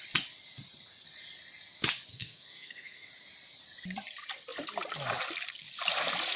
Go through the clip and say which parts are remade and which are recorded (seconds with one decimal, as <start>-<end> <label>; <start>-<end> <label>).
0.0-2.1 recorded; 2.1-3.1 remade; 3.1-6.4 recorded